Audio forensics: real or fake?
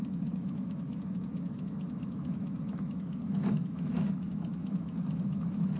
fake